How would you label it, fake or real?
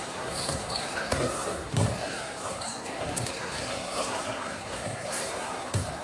fake